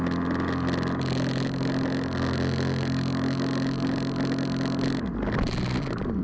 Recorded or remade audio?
recorded